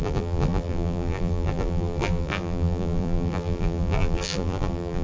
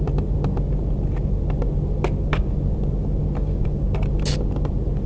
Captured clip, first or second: second